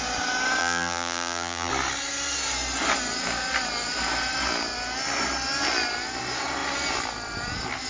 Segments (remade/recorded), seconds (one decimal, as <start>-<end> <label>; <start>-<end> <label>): 0.0-0.6 recorded; 0.6-1.7 remade; 1.7-7.9 recorded